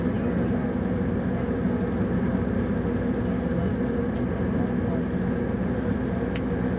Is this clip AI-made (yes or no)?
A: no